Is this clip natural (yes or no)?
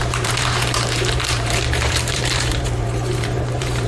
no